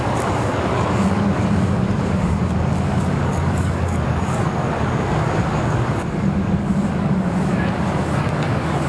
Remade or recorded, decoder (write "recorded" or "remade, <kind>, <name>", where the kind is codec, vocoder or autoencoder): remade, codec, DAC